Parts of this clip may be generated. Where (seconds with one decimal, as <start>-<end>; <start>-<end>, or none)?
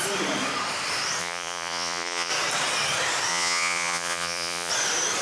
1.2-2.3; 3.3-4.7